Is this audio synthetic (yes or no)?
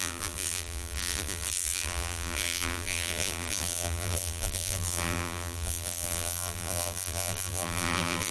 yes